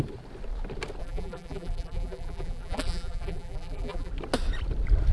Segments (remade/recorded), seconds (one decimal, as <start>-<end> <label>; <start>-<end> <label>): 0.0-1.0 recorded; 1.0-4.1 remade; 4.1-5.1 recorded